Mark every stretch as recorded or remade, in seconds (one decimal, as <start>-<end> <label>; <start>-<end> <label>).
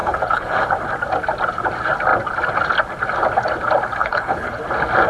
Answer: 0.0-0.7 remade; 0.7-4.0 recorded; 4.0-4.6 remade; 4.6-5.1 recorded